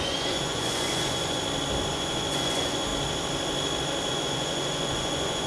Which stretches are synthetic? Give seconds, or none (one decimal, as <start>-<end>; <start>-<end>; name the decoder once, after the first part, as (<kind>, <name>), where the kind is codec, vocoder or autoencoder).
0.0-1.4 (vocoder, Vocos); 1.9-2.9; 4.1-5.5